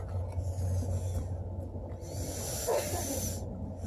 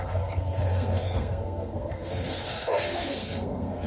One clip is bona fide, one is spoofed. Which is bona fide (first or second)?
first